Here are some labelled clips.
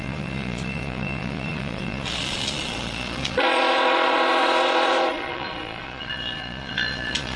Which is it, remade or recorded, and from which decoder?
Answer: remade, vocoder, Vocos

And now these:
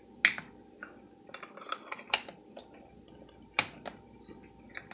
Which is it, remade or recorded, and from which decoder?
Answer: recorded